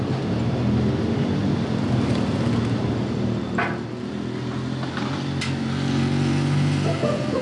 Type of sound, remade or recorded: recorded